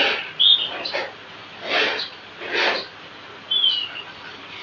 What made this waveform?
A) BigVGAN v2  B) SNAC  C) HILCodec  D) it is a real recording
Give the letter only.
D